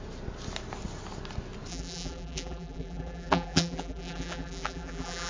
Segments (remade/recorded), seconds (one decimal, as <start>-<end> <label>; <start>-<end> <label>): 0.0-1.7 recorded; 1.7-5.3 remade